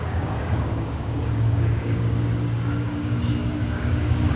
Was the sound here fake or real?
fake